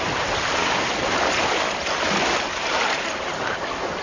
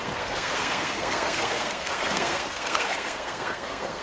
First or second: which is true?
first